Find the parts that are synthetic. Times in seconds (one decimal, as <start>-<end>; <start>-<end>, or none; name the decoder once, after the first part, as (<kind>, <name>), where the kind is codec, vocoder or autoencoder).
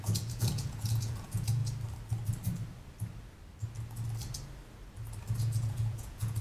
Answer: 0.0-1.6 (vocoder, Vocos); 5.4-6.4